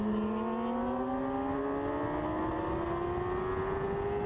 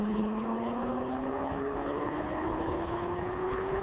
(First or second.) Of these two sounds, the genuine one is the first